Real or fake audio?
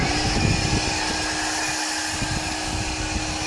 real